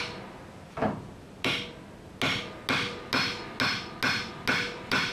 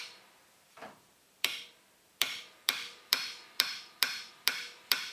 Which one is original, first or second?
first